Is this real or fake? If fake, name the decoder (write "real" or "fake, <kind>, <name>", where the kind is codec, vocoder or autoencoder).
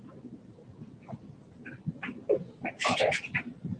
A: real